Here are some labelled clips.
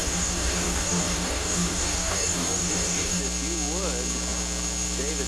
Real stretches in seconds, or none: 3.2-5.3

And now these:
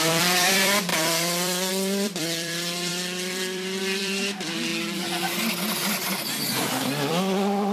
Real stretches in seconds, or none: 4.7-6.6

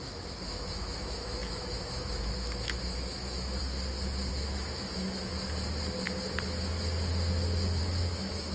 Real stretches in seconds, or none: 3.6-4.3; 5.3-7.8

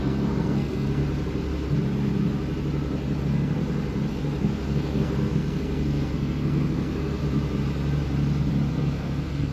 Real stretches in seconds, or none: 1.0-3.2; 3.6-4.1; 7.2-8.7

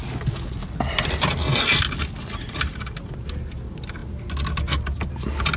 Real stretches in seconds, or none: 0.0-5.6

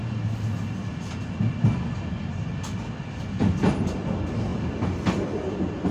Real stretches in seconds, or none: 0.0-5.9